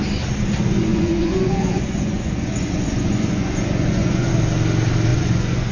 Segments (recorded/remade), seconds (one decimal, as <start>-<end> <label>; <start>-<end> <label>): 0.0-0.9 recorded; 0.9-4.3 remade; 4.3-5.1 recorded; 5.1-5.7 remade